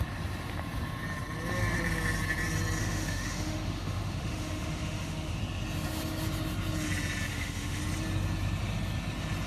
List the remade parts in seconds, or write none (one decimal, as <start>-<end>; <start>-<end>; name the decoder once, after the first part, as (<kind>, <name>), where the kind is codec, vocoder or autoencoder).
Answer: 2.8-5.4 (autoencoder, DAC-VAE); 7.3-7.8